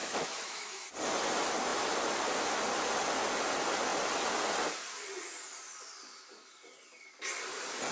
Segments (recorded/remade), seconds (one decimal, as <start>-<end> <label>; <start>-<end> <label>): 0.0-0.9 remade; 0.9-7.9 recorded